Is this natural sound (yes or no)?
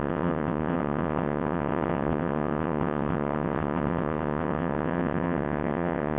no